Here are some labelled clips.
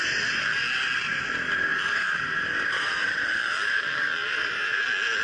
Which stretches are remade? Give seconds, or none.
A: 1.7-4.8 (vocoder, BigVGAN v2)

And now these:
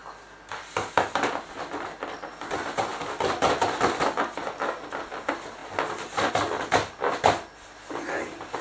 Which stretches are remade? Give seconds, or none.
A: none

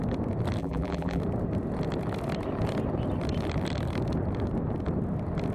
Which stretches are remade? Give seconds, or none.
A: 0.6-1.2 (vocoder, BigVGAN v2)

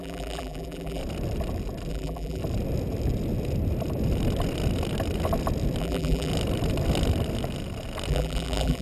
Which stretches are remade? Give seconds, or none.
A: 0.0-1.0 (vocoder, BigVGAN v2); 1.9-2.4; 5.8-6.3; 8.1-8.8

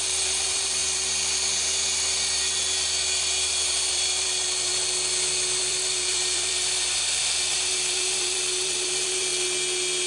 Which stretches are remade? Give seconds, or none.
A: 0.0-0.8 (vocoder, BigVGAN v2); 3.9-4.7; 5.6-9.3

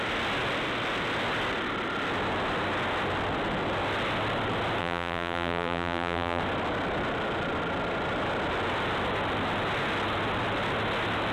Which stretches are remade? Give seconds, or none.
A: 4.8-6.4 (vocoder, BigVGAN v2)

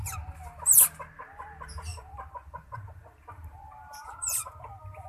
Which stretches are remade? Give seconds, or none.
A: 1.9-5.1 (vocoder, BigVGAN v2)

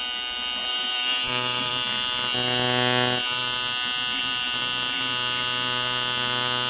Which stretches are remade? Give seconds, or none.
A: 0.7-1.7 (vocoder, BigVGAN v2)